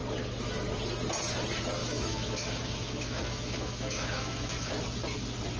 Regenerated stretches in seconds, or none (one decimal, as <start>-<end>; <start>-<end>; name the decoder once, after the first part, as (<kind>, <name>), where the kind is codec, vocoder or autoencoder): 1.8-4.7 (autoencoder, DAC-VAE)